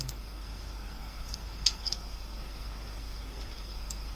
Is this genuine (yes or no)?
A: no